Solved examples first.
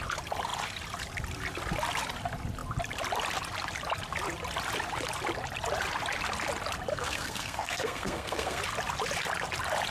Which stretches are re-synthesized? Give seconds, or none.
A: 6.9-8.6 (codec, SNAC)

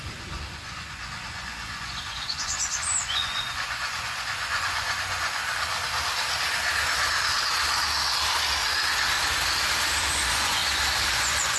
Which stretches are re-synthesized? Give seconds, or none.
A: 0.0-5.4 (vocoder, Vocos); 10.0-10.6; 11.1-11.6

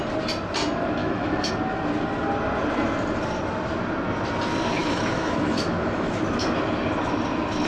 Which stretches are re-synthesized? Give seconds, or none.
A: 1.0-1.5 (autoencoder, DAC-VAE); 4.8-6.2

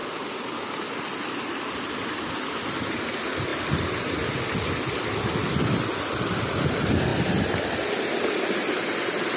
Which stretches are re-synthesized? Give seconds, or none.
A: none

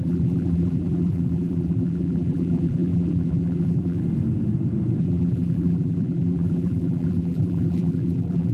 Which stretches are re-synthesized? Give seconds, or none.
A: 0.0-4.0 (vocoder, BigVGAN v2); 5.0-8.5

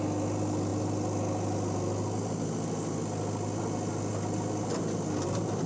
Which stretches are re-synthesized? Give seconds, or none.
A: none